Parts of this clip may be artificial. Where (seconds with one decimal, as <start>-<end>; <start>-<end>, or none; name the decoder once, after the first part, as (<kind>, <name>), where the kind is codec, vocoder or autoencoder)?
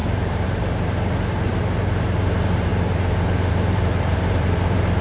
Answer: 0.0-2.7 (vocoder, BigVGAN v2); 3.5-5.0